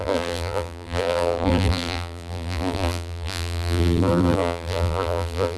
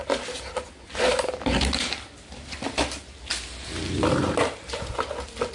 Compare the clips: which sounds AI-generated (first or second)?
first